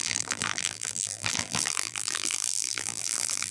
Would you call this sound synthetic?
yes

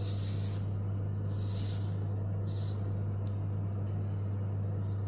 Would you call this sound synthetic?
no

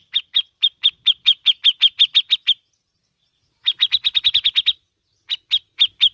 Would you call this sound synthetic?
no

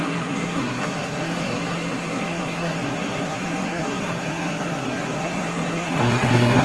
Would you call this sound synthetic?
yes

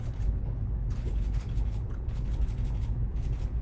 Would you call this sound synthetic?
yes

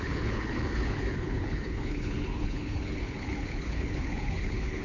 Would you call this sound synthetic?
yes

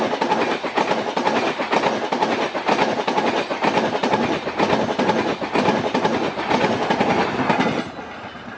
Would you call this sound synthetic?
no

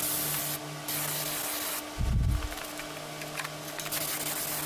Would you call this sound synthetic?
no